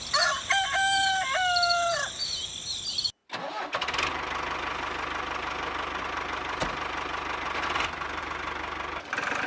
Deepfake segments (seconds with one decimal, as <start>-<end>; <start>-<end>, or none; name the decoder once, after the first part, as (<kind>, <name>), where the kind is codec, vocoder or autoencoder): none